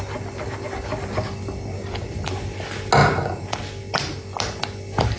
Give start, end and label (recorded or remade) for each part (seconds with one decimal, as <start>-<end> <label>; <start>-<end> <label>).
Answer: 0.0-5.2 recorded